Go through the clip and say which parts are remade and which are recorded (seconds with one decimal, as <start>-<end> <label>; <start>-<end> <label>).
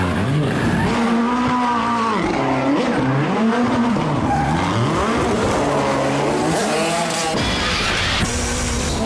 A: 0.0-9.1 recorded